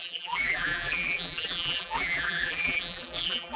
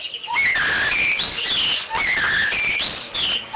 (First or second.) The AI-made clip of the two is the first